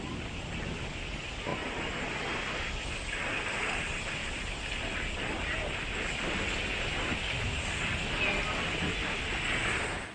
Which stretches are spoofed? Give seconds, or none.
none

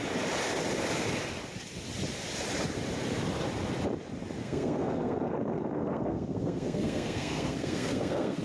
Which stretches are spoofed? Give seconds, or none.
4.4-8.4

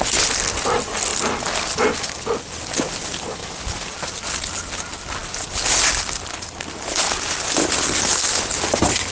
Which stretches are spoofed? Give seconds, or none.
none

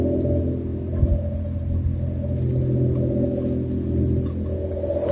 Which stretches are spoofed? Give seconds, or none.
none

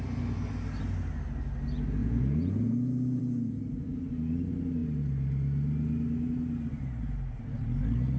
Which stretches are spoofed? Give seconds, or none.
2.0-3.2

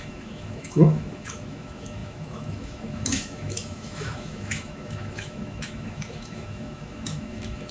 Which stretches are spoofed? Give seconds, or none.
0.0-7.7

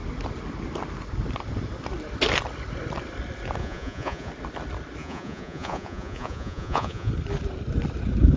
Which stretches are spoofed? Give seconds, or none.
3.6-4.3; 5.0-7.1

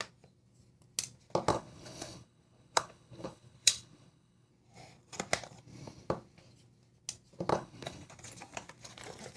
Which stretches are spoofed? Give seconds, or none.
1.5-4.5; 7.5-8.1